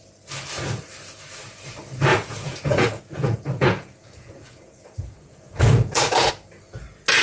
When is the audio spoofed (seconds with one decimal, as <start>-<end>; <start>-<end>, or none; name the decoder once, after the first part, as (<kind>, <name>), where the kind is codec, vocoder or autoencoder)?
2.1-6.3 (vocoder, Vocos)